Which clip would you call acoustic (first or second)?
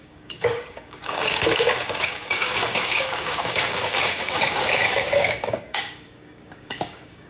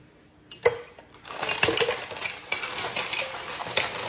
second